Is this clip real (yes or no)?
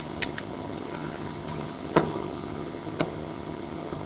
no